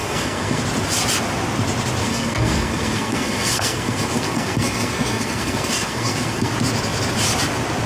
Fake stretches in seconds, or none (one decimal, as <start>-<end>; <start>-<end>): 0.0-0.6; 2.0-6.5